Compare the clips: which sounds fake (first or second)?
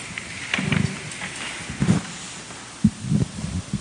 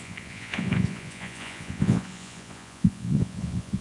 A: second